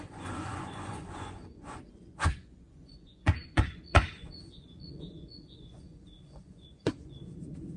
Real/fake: fake